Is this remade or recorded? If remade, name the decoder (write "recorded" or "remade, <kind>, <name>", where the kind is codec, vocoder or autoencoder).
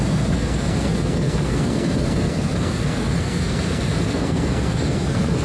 remade, codec, SNAC